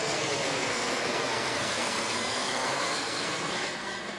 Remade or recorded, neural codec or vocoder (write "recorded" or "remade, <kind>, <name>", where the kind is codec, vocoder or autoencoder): remade, codec, SNAC